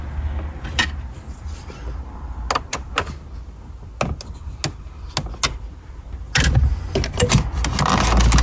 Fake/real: real